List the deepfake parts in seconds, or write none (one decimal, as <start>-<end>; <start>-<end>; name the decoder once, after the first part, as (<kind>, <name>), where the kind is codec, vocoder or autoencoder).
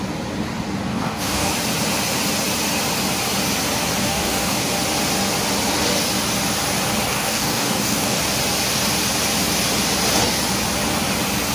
0.9-1.5 (codec, DAC); 4.0-4.7; 7.1-8.2